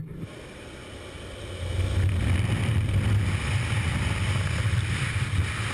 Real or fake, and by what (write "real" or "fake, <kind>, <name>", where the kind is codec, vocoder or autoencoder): real